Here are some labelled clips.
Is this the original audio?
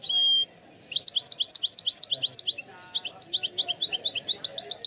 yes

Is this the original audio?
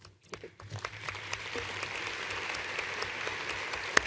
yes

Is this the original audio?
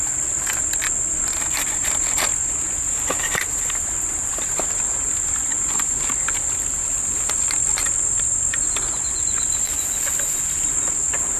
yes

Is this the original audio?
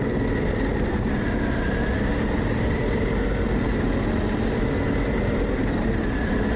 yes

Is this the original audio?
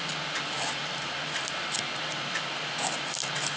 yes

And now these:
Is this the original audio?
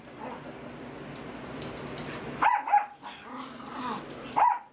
yes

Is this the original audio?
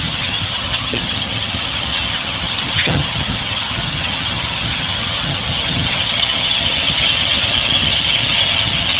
no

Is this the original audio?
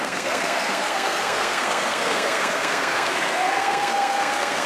no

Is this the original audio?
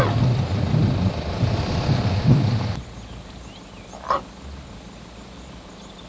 yes